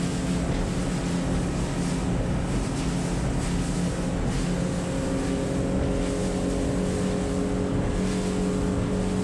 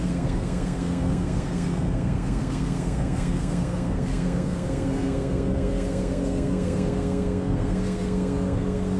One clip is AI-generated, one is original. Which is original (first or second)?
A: first